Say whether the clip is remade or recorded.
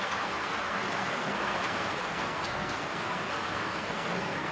remade